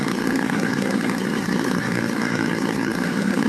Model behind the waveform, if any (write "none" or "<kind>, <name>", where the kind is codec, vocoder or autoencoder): codec, SNAC